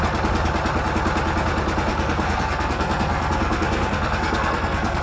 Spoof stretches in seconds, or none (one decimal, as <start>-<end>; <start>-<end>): 1.9-5.0